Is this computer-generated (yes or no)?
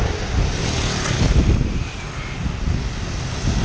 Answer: no